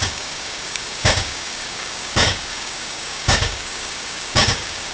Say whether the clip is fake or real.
fake